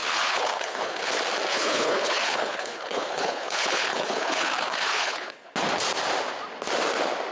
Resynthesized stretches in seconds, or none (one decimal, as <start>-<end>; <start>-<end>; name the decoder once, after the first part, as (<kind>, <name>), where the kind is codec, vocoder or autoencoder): 0.0-1.1 (codec, HILCodec); 1.5-5.5